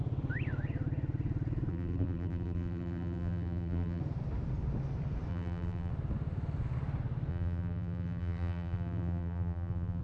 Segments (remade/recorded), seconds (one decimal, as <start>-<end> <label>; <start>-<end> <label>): 0.0-1.7 recorded; 1.7-4.0 remade; 4.0-5.3 recorded; 5.3-5.9 remade; 5.9-7.3 recorded; 7.3-10.0 remade